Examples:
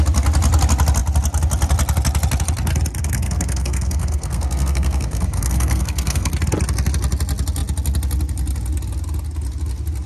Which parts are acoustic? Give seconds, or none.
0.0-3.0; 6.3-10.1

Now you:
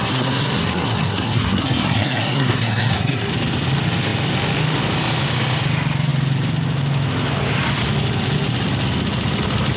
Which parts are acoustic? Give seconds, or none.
3.3-9.8